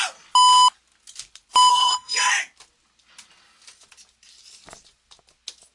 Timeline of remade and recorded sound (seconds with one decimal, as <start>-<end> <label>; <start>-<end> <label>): 0.0-1.7 recorded; 1.7-2.3 remade; 2.3-5.7 recorded